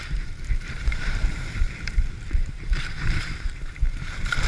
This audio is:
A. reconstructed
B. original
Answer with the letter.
A